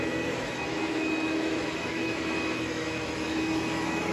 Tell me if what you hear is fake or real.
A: fake